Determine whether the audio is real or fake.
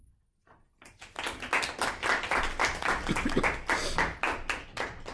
real